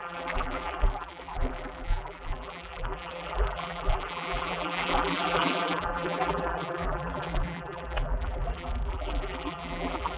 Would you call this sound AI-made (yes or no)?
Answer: yes